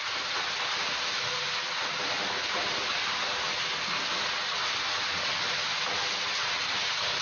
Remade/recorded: recorded